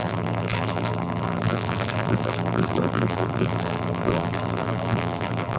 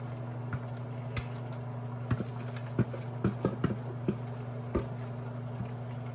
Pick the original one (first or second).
second